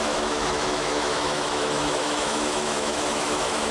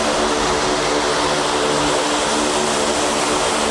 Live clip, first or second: second